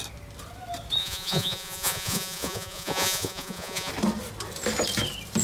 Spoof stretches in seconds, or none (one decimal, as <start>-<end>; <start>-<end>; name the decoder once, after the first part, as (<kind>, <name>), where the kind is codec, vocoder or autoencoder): 1.0-3.9 (vocoder, Vocos)